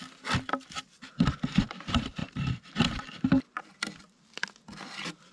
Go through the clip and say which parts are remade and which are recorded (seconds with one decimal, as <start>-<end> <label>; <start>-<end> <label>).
0.0-5.3 recorded